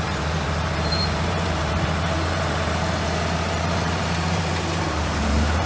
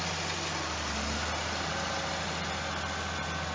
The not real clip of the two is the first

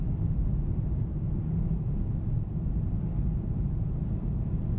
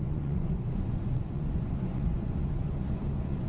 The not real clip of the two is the second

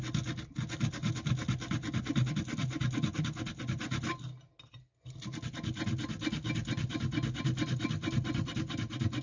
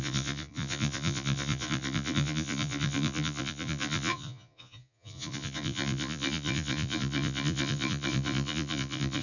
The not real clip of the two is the second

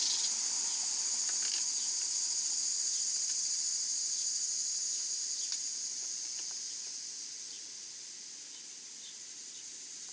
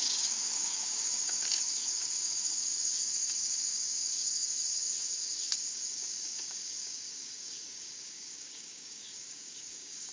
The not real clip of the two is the second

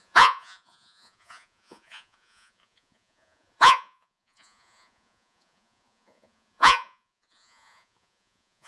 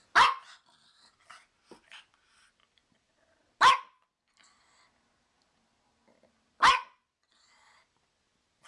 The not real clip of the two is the first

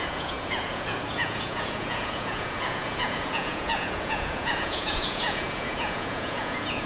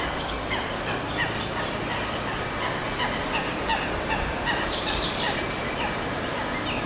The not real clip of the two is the first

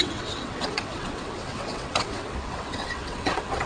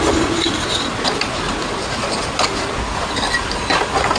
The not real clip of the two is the first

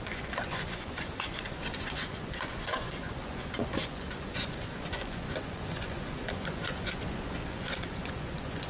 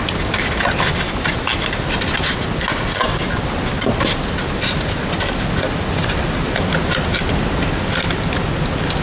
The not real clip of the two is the first